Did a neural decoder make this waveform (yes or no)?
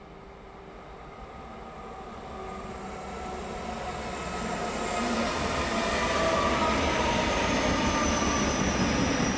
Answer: no